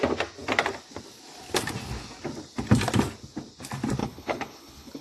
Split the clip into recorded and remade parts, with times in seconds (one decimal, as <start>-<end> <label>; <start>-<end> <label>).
0.0-4.0 recorded; 4.0-5.0 remade

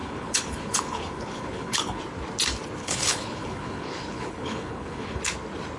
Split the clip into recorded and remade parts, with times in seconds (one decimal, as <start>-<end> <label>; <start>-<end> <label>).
0.0-2.0 remade; 2.0-2.8 recorded; 2.8-5.2 remade; 5.2-5.8 recorded

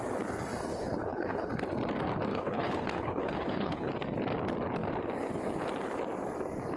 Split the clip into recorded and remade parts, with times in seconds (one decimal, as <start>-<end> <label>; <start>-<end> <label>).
0.0-0.7 recorded; 0.7-1.5 remade; 1.5-2.3 recorded; 2.3-3.9 remade; 3.9-6.8 recorded

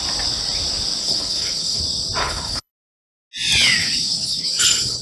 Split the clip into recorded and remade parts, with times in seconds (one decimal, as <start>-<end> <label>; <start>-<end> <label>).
0.0-1.0 recorded; 1.0-1.8 remade; 1.8-2.2 recorded; 2.2-2.7 remade; 2.7-3.8 recorded; 3.8-5.0 remade

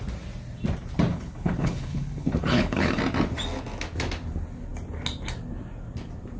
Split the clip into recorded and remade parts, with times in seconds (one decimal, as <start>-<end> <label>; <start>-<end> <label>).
0.0-1.1 recorded; 1.1-3.0 remade; 3.0-6.4 recorded